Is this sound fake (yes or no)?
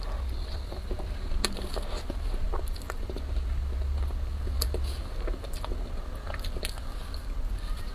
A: no